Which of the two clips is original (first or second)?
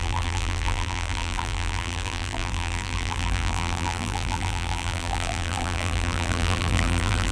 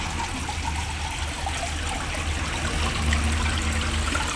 second